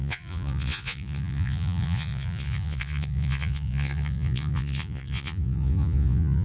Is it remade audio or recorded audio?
remade